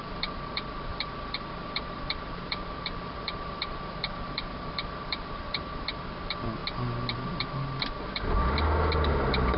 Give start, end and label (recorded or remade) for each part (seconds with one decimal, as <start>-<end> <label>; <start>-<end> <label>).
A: 0.0-6.6 remade; 6.6-7.4 recorded; 7.4-9.6 remade